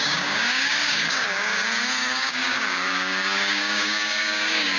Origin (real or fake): fake